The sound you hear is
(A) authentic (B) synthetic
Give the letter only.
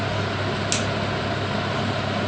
A